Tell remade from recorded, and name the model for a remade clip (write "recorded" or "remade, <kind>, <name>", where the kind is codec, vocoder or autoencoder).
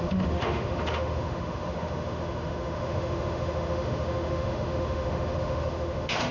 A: remade, autoencoder, DAC-VAE